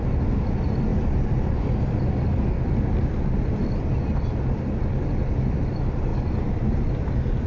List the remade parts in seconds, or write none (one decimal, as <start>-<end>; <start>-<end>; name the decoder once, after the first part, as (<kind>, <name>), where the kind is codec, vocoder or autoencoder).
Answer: none